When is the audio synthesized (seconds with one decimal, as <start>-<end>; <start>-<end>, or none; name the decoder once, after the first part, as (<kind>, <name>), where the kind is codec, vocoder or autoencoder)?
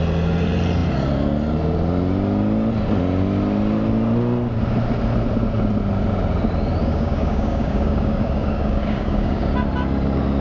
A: 6.8-9.5 (codec, DAC)